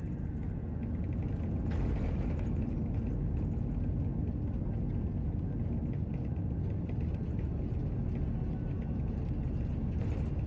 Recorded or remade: recorded